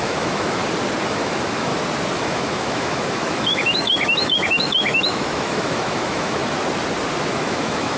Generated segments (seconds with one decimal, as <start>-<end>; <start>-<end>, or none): 0.0-0.6; 1.1-1.7; 2.2-6.4; 7.3-8.0